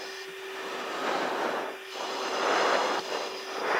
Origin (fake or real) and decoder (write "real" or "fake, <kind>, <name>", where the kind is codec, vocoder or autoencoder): real